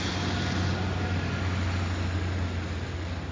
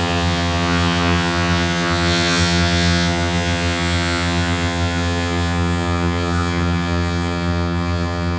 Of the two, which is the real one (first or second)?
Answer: first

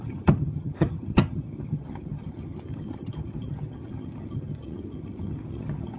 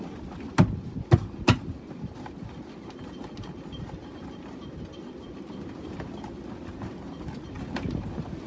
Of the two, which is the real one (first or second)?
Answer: second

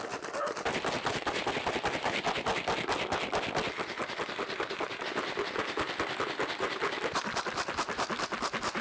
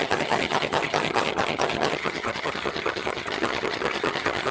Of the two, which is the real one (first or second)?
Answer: first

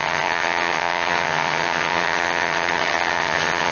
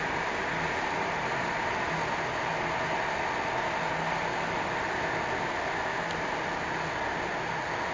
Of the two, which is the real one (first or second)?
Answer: second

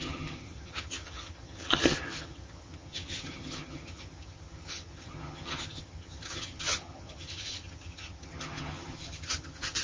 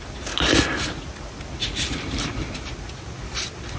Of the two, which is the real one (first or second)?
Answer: second